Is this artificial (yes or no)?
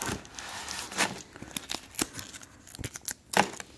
no